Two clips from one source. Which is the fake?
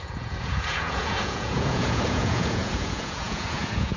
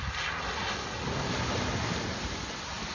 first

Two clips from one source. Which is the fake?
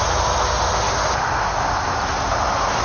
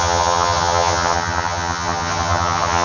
second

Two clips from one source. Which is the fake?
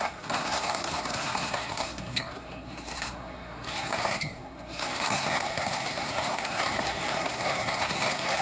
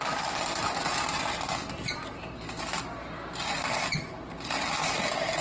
first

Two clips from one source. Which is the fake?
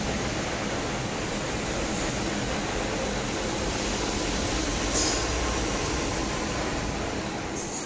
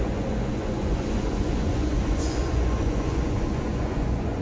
second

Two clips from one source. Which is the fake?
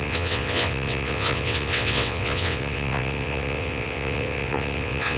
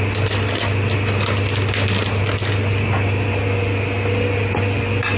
first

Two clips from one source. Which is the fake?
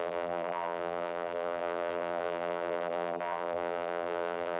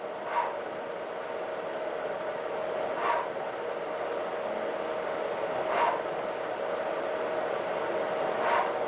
first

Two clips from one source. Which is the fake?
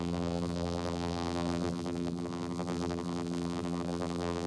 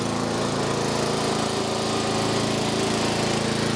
first